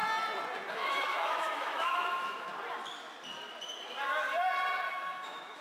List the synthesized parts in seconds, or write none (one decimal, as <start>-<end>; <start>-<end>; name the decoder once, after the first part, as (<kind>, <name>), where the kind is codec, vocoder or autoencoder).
0.7-2.5 (autoencoder, DAC-VAE); 4.9-5.6